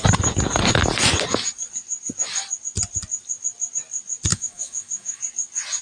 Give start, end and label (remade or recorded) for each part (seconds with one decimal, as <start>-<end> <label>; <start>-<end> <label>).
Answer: 0.0-4.3 recorded; 4.3-5.2 remade; 5.2-5.8 recorded